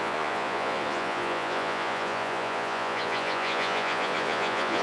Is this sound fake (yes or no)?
yes